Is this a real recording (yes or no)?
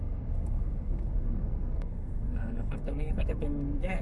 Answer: no